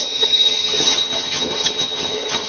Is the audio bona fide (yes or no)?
no